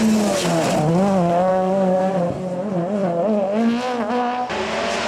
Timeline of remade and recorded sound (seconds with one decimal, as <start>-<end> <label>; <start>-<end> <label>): 0.0-1.5 recorded; 1.5-2.1 remade; 2.1-5.1 recorded